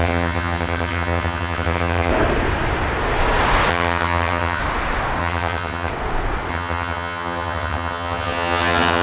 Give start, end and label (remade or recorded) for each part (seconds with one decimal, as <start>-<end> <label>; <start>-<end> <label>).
0.0-2.1 remade; 2.1-3.7 recorded; 3.7-4.6 remade; 4.6-5.2 recorded; 5.2-5.9 remade; 5.9-6.5 recorded; 6.5-9.0 remade

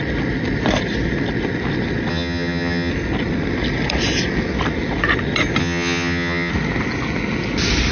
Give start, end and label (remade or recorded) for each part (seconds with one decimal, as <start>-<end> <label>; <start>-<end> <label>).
0.0-2.1 recorded; 2.1-2.9 remade; 2.9-5.6 recorded; 5.6-6.5 remade; 6.5-7.9 recorded

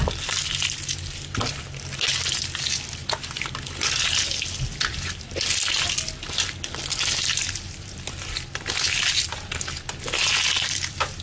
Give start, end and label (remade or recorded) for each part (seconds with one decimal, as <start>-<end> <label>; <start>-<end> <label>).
0.0-11.2 recorded

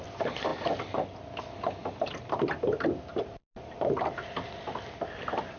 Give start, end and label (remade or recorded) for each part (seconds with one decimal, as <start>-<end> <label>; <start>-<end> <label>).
0.0-5.6 recorded